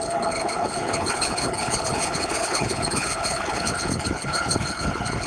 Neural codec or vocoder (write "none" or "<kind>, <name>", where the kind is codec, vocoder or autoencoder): codec, HILCodec